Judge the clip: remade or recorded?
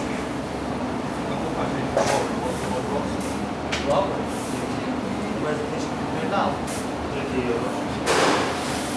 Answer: recorded